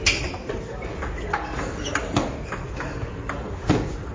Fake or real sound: real